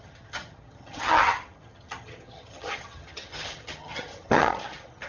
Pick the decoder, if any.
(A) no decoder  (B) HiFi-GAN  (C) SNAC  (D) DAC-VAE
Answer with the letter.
B